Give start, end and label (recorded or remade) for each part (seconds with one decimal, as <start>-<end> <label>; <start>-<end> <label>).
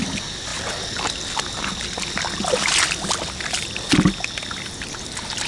0.0-5.5 recorded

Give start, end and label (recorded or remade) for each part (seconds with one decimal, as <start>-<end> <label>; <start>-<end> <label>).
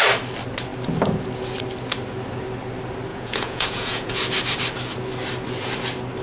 0.0-3.1 recorded; 3.1-4.1 remade; 4.1-6.2 recorded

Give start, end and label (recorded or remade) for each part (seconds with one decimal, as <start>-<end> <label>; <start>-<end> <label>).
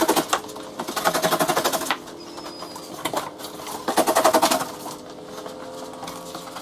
0.0-6.6 recorded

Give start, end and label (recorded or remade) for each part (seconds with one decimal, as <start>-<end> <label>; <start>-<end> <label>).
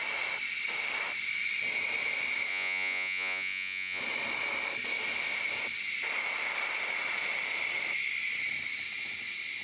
0.0-2.5 recorded; 2.5-4.0 remade; 4.0-9.6 recorded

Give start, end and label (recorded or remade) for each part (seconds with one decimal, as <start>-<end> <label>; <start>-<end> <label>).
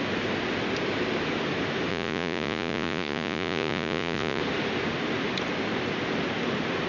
0.0-1.9 recorded; 1.9-4.4 remade; 4.4-6.9 recorded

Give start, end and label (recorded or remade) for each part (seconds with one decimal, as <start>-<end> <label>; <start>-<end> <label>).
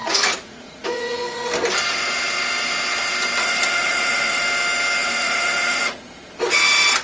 0.0-1.5 remade; 1.5-3.4 recorded; 3.4-4.4 remade; 4.4-5.0 recorded; 5.0-6.0 remade; 6.0-7.0 recorded